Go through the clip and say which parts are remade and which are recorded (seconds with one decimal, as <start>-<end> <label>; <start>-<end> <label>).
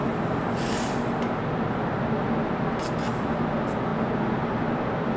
0.0-5.2 recorded